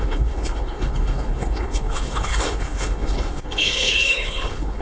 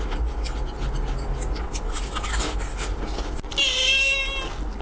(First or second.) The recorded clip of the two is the second